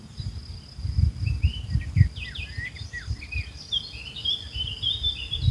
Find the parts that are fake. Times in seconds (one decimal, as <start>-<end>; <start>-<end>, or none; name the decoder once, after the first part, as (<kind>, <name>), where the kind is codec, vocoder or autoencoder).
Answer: 0.4-3.7 (vocoder, BigVGAN v2)